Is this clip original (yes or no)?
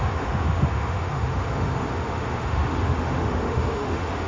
no